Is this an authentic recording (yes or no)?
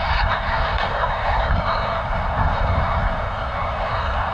no